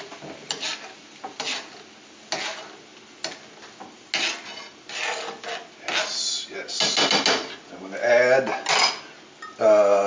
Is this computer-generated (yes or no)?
no